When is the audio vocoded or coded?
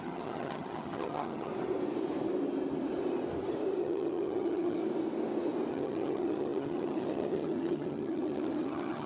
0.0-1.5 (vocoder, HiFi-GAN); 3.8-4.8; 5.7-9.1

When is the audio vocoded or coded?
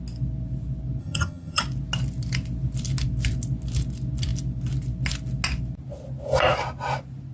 1.0-1.6 (vocoder, HiFi-GAN)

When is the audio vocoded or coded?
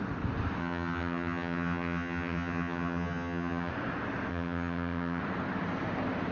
0.6-3.7 (vocoder, HiFi-GAN); 4.3-5.2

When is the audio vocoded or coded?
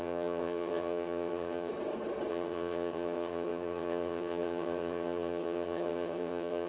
0.0-1.7 (vocoder, HiFi-GAN); 2.3-6.7